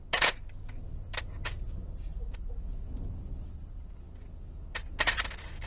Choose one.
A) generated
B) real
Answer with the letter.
B